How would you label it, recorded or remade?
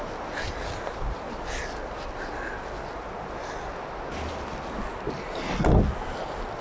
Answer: recorded